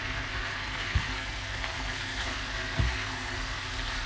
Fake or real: fake